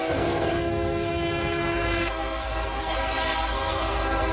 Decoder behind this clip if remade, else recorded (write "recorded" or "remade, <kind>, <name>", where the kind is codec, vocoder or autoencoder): remade, codec, SNAC